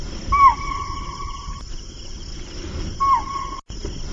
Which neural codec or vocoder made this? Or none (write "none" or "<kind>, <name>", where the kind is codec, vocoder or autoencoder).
vocoder, BigVGAN v2